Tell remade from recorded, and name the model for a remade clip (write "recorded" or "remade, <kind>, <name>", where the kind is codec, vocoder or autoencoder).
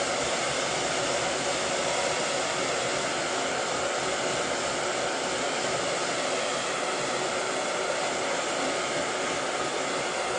recorded